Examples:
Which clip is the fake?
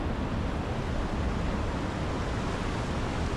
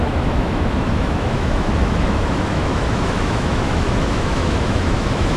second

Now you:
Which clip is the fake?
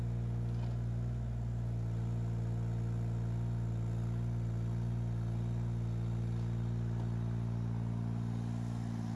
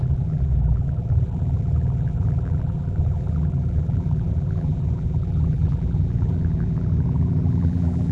second